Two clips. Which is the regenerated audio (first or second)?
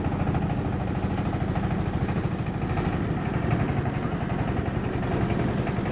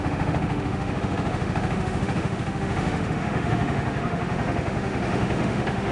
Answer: second